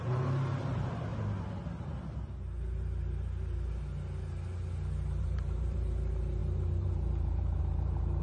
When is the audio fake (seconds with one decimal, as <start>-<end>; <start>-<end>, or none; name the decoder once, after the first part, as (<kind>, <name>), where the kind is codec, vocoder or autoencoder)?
0.0-1.1 (vocoder, BigVGAN v2); 5.2-8.2